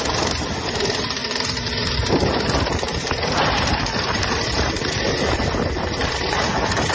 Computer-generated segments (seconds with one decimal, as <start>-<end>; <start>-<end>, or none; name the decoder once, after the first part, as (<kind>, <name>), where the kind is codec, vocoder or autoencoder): 0.0-6.9 (vocoder, BigVGAN v2)